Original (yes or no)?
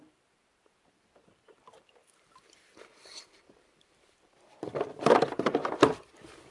no